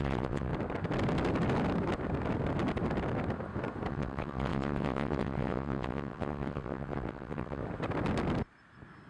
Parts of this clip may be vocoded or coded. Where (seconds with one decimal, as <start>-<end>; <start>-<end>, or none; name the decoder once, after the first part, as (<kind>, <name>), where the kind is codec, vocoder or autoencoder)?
0.0-0.5 (vocoder, WaveNeXt); 3.9-7.6